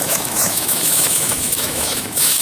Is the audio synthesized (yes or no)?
yes